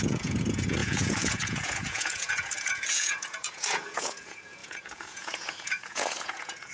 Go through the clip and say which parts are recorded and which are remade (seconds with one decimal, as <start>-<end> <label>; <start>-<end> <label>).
0.0-6.7 remade